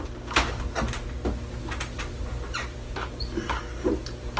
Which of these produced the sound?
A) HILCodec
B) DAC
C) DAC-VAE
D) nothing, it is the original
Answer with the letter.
D